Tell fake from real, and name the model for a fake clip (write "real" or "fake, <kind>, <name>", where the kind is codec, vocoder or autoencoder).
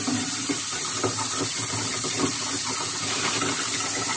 real